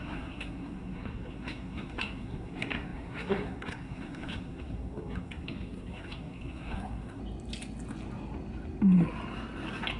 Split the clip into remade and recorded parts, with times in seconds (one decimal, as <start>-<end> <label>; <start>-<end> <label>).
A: 0.0-7.2 remade; 7.2-10.0 recorded